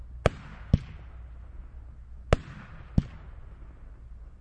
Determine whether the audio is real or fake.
real